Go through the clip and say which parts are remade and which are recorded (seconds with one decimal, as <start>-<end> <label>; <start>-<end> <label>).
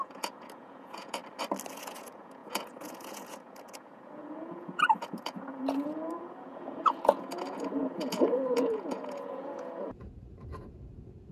0.0-1.2 remade; 1.2-1.7 recorded; 1.7-11.3 remade